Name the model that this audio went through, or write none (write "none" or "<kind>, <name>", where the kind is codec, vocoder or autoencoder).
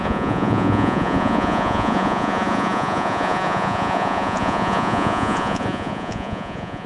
vocoder, Vocos